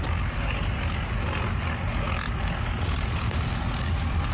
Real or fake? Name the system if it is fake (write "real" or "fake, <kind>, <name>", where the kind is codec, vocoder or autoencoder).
real